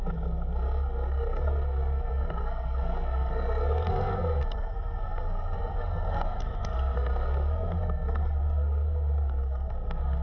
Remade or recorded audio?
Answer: remade